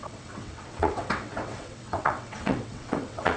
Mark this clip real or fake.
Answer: fake